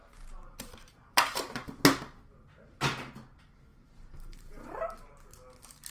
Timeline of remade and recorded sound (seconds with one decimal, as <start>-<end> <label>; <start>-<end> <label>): 0.0-1.8 remade; 1.8-3.7 recorded; 3.7-4.5 remade; 4.5-5.9 recorded